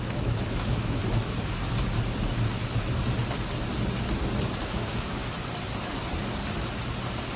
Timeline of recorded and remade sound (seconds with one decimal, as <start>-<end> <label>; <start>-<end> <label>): 0.0-1.0 remade; 1.0-4.6 recorded; 4.6-5.2 remade; 5.2-7.4 recorded